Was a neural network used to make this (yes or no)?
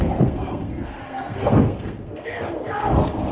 yes